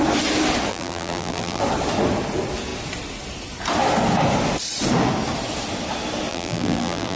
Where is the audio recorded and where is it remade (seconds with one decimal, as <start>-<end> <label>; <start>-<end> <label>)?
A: 0.0-0.7 recorded; 0.7-1.6 remade; 1.6-6.3 recorded; 6.3-7.2 remade